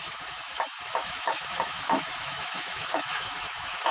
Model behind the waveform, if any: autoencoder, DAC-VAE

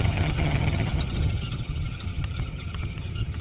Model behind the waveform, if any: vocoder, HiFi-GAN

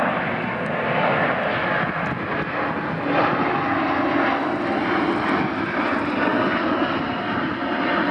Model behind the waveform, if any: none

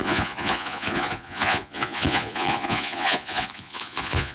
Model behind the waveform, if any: vocoder, Vocos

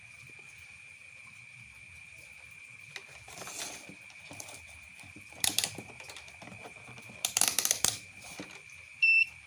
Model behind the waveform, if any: vocoder, BigVGAN v2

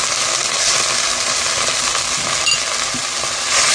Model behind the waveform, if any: none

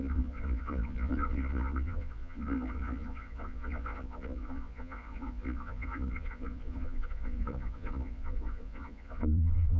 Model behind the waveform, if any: vocoder, Vocos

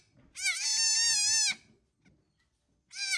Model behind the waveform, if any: none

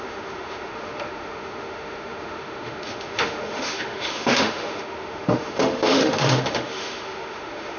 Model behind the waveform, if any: autoencoder, DAC-VAE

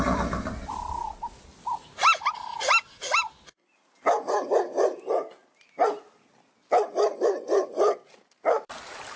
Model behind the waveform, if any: none